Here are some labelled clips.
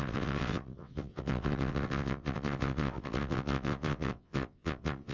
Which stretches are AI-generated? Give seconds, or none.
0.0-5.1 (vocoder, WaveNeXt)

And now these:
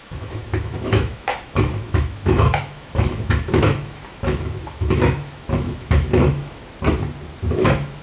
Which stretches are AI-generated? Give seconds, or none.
0.0-6.6 (autoencoder, DAC-VAE); 7.5-8.0

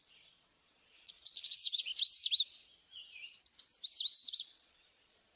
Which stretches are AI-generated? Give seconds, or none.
0.0-1.9 (vocoder, Vocos); 4.4-5.4

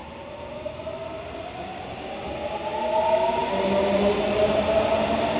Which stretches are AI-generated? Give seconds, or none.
0.0-2.0 (vocoder, BigVGAN v2)

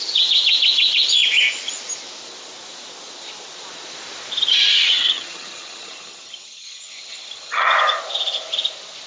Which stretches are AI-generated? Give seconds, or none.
4.7-7.7 (vocoder, HiFi-GAN)

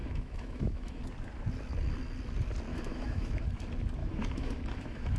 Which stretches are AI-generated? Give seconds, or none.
0.0-1.0 (autoencoder, DAC-VAE); 2.7-3.4; 4.0-5.2

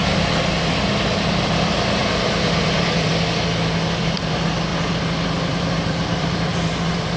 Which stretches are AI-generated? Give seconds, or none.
1.4-2.0 (vocoder, BigVGAN v2); 2.6-3.1; 4.2-4.7; 5.5-7.2